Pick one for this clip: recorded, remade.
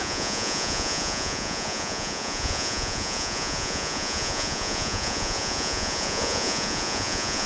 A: remade